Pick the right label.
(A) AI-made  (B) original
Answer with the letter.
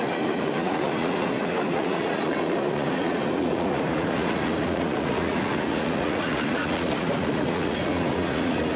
A